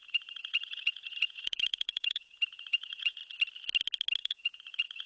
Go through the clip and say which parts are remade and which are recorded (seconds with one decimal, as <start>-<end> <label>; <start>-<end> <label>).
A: 0.0-3.2 remade; 3.2-4.2 recorded; 4.2-5.1 remade